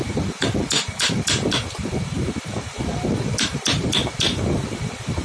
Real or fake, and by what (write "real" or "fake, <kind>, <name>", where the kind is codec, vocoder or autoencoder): fake, vocoder, BigVGAN v2